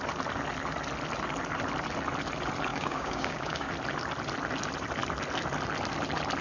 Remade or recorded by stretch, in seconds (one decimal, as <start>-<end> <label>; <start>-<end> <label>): 0.0-2.7 recorded; 2.7-3.7 remade; 3.7-6.4 recorded